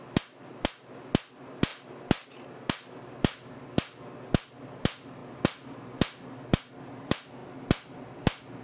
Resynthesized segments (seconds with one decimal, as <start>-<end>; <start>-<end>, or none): none